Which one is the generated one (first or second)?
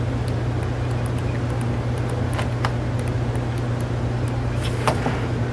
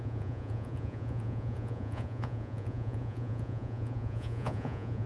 second